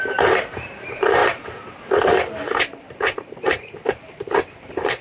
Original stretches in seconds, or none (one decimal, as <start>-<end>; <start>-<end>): none